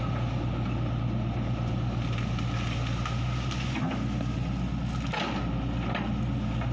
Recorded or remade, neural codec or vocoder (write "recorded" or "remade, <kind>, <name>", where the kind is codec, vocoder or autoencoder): recorded